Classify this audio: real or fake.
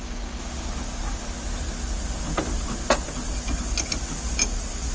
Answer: real